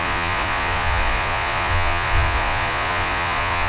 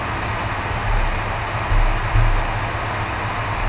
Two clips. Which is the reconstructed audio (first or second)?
first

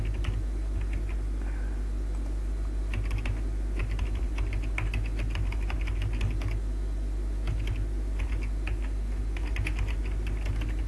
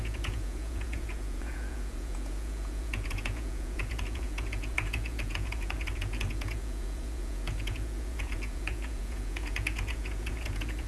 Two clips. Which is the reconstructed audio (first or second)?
second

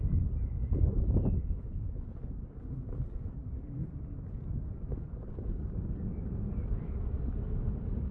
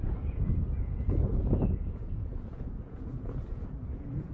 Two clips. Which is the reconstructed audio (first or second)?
second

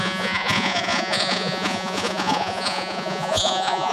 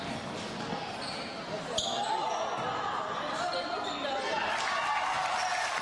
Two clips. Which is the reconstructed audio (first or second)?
first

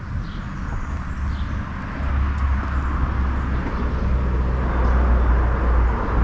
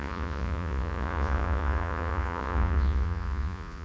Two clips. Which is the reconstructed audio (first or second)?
second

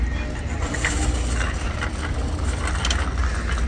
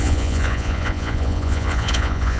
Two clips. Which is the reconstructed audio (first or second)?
second